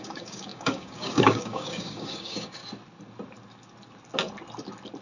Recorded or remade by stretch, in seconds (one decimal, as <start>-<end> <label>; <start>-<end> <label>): 0.0-2.6 remade; 2.6-5.0 recorded